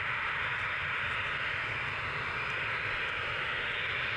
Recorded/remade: recorded